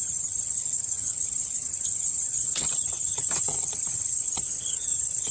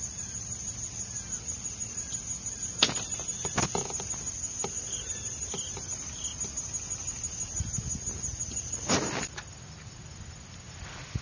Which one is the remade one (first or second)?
first